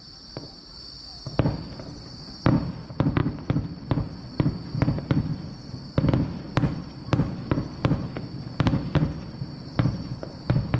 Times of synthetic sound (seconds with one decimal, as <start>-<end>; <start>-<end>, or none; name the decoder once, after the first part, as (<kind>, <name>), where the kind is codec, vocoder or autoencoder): 0.0-1.1 (vocoder, BigVGAN v2); 1.8-3.2; 4.3-5.3; 10.1-10.8